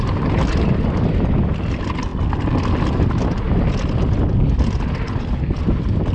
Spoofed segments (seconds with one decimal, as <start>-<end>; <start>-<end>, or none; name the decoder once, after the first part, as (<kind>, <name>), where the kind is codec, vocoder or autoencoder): none

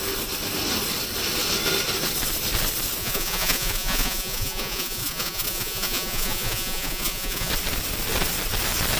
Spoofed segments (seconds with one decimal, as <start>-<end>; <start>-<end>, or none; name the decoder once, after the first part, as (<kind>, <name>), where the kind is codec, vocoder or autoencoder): 3.0-7.5 (vocoder, Vocos)

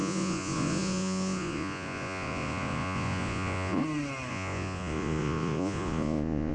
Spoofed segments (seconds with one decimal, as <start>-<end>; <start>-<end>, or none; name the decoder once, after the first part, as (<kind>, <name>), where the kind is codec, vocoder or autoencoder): 0.0-3.8 (vocoder, Vocos); 4.3-6.5

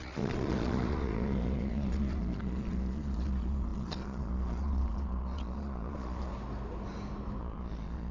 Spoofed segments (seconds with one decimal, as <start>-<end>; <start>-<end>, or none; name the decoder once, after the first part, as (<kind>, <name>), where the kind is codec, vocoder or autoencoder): 0.0-6.3 (vocoder, Vocos); 7.4-8.1

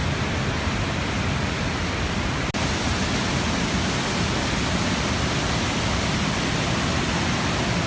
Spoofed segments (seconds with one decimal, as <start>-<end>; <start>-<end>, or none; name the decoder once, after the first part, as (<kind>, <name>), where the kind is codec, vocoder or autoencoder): none

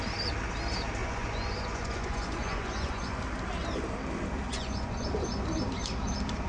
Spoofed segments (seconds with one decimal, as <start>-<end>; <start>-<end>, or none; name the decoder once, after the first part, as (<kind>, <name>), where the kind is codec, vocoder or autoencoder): 1.0-3.2 (vocoder, Vocos); 4.5-5.3

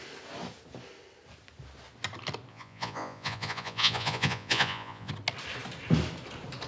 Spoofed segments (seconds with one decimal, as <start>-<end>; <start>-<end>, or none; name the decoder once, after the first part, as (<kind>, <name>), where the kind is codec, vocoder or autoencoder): 2.5-5.1 (vocoder, Vocos)